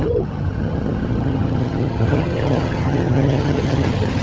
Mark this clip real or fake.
fake